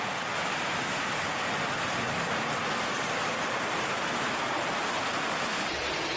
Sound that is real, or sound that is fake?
real